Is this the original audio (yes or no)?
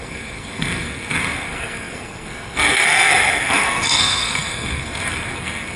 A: no